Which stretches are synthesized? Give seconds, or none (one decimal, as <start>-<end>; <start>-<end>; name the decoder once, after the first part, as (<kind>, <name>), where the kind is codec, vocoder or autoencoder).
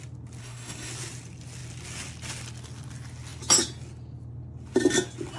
0.4-0.9 (codec, SNAC)